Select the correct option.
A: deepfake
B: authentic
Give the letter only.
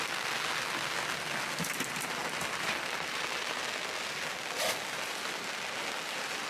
B